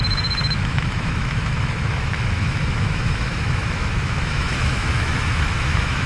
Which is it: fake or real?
fake